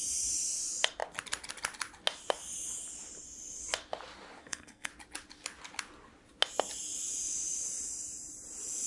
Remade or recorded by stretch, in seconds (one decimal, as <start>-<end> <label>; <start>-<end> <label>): 0.0-4.4 recorded; 4.4-4.9 remade; 4.9-8.9 recorded